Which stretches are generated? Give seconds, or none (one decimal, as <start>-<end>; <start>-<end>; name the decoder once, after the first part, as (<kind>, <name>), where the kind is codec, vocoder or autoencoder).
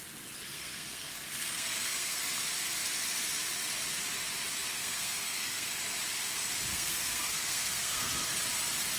0.5-2.2 (codec, SNAC); 4.8-5.8; 6.7-8.1